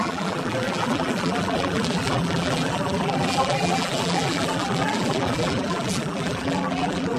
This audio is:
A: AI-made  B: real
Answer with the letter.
A